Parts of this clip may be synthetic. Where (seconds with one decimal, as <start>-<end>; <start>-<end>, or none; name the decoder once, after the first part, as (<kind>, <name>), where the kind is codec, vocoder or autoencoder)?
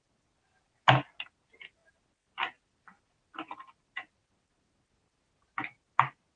none